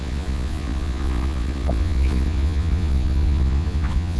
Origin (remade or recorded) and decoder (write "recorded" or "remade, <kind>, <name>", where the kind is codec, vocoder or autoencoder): remade, vocoder, Vocos